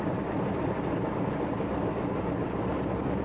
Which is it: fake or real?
fake